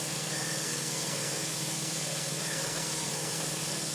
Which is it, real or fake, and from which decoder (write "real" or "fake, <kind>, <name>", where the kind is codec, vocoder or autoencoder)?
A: fake, codec, SNAC